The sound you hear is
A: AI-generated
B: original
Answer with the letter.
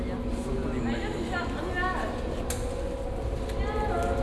B